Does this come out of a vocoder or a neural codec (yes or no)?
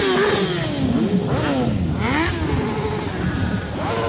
no